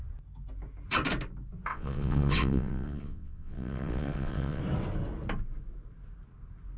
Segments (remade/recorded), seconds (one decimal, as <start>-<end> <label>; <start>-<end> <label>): 0.0-1.7 recorded; 1.7-4.6 remade; 4.6-6.8 recorded